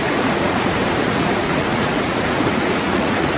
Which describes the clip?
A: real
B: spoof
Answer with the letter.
B